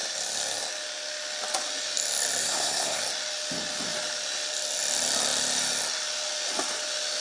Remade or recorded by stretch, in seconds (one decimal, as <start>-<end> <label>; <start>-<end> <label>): 0.0-2.4 recorded; 2.4-3.0 remade; 3.0-7.2 recorded